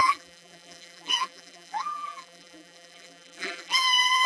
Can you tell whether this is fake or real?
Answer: fake